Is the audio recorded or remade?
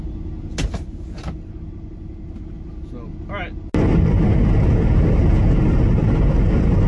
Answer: recorded